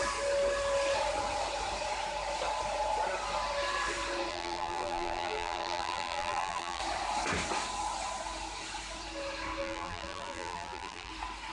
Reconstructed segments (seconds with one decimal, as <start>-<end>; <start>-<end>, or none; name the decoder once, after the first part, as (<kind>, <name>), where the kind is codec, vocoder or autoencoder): 4.3-6.8 (vocoder, BigVGAN v2); 9.6-11.1